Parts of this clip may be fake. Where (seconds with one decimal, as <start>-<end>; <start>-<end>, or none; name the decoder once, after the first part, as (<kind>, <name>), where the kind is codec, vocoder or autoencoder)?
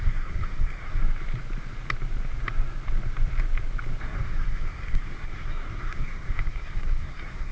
0.0-1.0 (codec, SNAC); 4.0-7.5